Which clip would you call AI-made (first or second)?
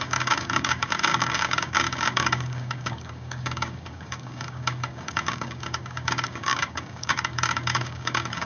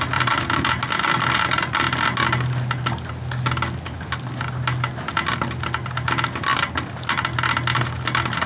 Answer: first